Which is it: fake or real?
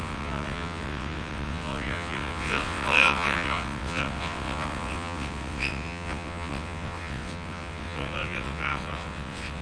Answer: fake